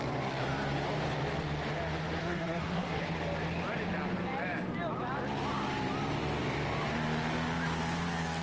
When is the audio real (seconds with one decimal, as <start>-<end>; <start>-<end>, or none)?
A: 0.0-2.2; 3.0-8.4